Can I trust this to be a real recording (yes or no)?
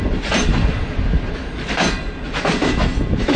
yes